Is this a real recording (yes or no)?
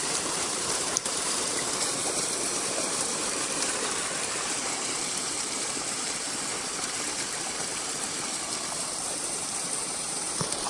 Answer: no